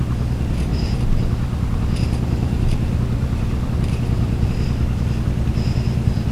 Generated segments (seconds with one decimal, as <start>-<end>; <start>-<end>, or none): 0.7-4.5